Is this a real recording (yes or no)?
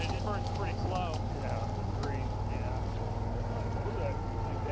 yes